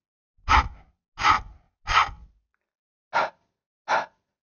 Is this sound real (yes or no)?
yes